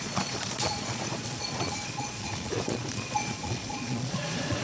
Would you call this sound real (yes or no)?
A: no